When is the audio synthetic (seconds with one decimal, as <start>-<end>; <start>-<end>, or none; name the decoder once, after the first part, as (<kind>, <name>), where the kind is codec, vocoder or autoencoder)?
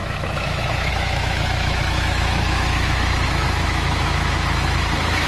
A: 0.0-5.3 (autoencoder, DAC-VAE)